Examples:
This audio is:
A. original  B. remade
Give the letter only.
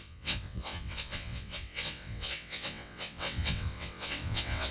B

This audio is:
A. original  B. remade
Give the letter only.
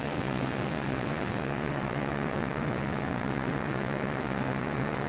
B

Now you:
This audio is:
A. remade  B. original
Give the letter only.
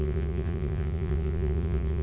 A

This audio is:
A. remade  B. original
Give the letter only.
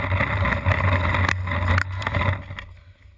B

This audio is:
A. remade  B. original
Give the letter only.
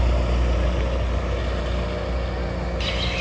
B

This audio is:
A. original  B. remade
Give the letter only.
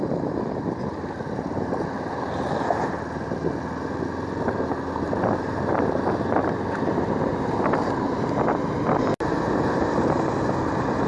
A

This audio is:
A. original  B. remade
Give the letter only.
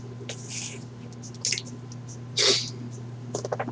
A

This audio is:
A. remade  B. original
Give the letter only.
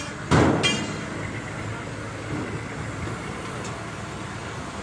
B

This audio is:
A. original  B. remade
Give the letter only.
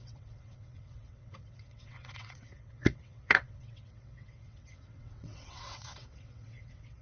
B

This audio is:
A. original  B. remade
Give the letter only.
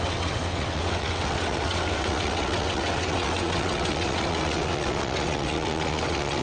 B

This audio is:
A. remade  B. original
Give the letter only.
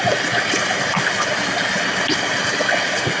B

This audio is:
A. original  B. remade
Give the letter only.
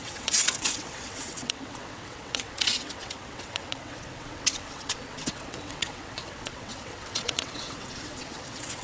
B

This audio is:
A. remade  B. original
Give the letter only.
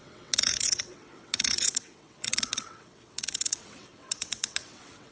A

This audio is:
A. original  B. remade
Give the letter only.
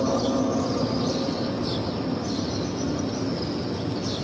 A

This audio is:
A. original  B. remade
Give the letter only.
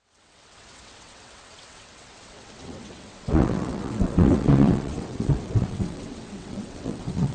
B